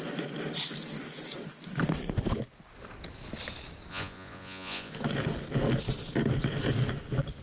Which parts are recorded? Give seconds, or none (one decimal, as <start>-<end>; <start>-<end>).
0.0-3.9; 4.9-7.4